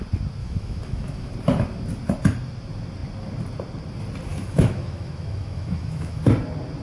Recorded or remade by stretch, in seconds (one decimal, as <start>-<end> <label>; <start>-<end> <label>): 0.0-0.4 recorded; 0.4-1.3 remade; 1.3-4.3 recorded; 4.3-6.2 remade; 6.2-6.8 recorded